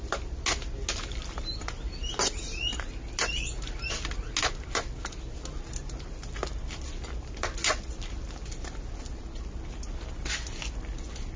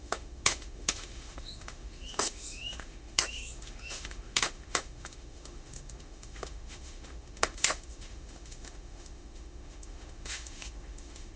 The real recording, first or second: first